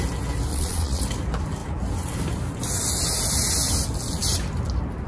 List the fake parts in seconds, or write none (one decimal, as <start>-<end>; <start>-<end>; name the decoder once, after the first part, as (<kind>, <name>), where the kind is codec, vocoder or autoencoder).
0.5-1.0 (vocoder, Vocos)